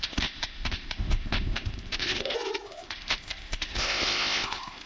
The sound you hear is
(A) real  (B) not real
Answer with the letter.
B